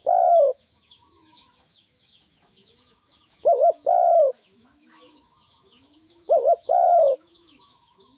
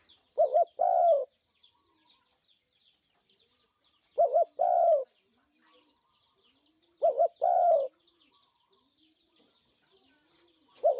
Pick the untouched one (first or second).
second